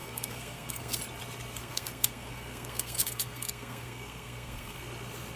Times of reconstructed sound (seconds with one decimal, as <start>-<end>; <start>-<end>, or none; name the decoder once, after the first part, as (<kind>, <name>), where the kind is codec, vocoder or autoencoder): 0.0-1.0 (codec, SNAC); 1.6-4.8

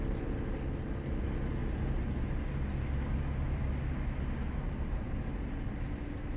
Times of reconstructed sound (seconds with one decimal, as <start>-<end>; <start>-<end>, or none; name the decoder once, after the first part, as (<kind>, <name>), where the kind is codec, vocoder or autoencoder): none

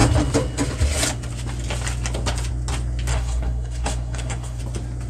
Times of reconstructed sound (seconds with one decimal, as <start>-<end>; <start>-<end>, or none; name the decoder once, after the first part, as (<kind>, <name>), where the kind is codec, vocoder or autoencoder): 3.1-4.6 (codec, SNAC)

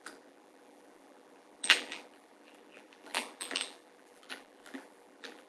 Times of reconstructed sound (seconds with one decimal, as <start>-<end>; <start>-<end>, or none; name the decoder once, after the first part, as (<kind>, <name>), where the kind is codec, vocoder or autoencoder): 0.0-5.5 (vocoder, BigVGAN v2)

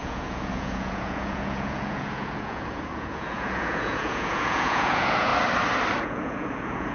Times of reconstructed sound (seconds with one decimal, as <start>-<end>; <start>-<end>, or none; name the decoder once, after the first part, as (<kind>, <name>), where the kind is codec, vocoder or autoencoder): 0.0-5.3 (vocoder, Vocos); 6.0-6.9

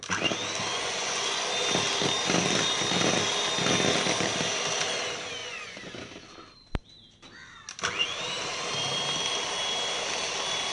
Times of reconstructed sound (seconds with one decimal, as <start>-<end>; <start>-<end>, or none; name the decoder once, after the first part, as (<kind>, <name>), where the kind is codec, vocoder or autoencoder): 0.7-1.5 (vocoder, Vocos); 5.4-6.1

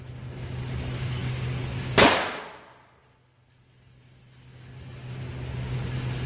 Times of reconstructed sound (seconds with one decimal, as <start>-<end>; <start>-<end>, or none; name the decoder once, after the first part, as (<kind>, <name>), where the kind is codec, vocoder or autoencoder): none

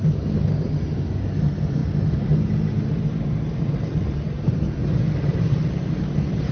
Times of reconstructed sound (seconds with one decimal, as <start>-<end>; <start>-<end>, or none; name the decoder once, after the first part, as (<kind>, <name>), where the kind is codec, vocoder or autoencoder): none